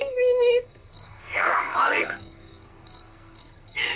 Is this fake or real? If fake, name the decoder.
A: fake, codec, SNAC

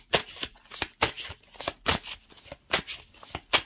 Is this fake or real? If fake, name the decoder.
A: real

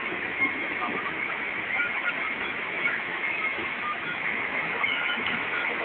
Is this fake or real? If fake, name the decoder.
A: fake, autoencoder, DAC-VAE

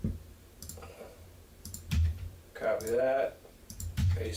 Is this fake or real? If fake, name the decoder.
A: fake, vocoder, BigVGAN v2